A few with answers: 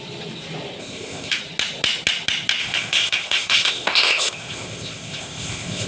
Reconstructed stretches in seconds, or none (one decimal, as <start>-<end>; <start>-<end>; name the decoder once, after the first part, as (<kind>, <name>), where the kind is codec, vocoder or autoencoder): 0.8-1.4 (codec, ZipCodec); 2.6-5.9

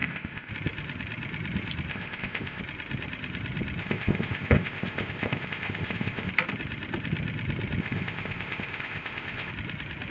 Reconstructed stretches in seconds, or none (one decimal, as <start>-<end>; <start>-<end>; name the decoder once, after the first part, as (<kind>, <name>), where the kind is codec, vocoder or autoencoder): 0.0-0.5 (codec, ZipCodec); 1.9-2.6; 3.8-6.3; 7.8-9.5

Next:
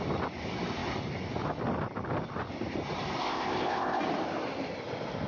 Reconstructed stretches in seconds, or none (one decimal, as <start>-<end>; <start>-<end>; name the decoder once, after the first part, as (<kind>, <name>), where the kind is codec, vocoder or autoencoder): 3.2-4.0 (codec, ZipCodec)

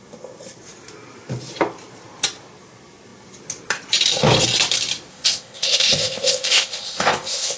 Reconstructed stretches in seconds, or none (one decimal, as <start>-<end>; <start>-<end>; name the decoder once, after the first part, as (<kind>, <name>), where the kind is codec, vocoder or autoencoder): 5.1-7.6 (codec, ZipCodec)

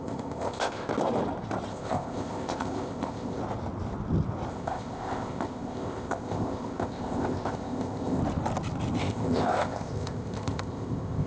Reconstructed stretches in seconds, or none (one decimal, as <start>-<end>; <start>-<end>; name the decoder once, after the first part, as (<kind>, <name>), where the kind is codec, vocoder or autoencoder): 0.0-0.9 (codec, ZipCodec); 1.7-3.4; 4.5-8.2; 9.0-11.3

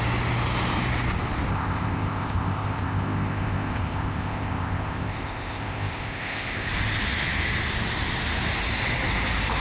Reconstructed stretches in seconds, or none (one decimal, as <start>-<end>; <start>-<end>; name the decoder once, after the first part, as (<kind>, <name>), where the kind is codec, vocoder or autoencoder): 1.5-6.7 (codec, ZipCodec)

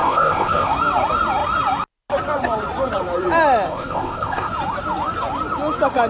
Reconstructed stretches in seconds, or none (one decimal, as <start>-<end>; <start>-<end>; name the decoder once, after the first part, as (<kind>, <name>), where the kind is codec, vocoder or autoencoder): 0.0-0.7 (codec, ZipCodec); 3.7-4.5

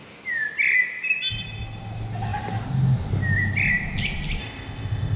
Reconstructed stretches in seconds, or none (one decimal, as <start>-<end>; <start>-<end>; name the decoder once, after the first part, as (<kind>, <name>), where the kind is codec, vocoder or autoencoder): 4.4-5.2 (codec, ZipCodec)